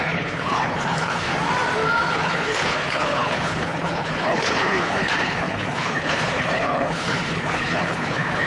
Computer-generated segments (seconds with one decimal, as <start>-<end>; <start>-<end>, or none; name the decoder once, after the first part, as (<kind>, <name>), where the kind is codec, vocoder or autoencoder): 0.0-1.3 (codec, HILCodec); 2.1-8.5